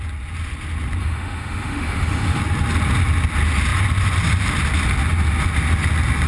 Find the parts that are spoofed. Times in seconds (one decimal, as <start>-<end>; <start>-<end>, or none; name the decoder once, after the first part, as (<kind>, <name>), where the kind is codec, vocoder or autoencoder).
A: 1.0-2.4 (autoencoder, DAC-VAE)